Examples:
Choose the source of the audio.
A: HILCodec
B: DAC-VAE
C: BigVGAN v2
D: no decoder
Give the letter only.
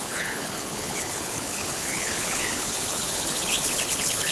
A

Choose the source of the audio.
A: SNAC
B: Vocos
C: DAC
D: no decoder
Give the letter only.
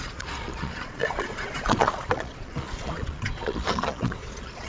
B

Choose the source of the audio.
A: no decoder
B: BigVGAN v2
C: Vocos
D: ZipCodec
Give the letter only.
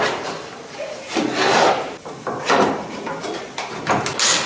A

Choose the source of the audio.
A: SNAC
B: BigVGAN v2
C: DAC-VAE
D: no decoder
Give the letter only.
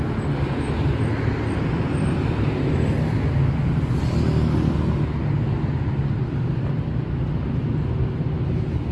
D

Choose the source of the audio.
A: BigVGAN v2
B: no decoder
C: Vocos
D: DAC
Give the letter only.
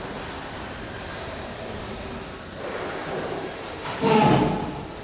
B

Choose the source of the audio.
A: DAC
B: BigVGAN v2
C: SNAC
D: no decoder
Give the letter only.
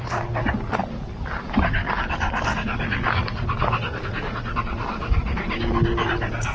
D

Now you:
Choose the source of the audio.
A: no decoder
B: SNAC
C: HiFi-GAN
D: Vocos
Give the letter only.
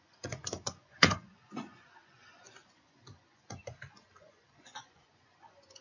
D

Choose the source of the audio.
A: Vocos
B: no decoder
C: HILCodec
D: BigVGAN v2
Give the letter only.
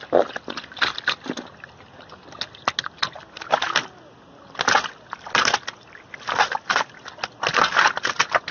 B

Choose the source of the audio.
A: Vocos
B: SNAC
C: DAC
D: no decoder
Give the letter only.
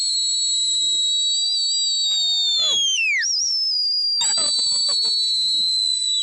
D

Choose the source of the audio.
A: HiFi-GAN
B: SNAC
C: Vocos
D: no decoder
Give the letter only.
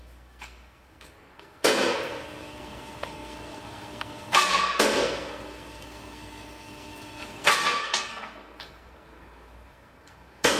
B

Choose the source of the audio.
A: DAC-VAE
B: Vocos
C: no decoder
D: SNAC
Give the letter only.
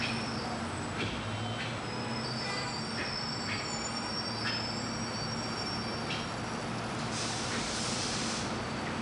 C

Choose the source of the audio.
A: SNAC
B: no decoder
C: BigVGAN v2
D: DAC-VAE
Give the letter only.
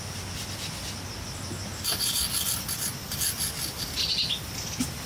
B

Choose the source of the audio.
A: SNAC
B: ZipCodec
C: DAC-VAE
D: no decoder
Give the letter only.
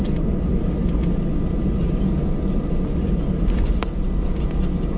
D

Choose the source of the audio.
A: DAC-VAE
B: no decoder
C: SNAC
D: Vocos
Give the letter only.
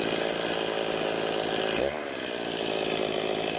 B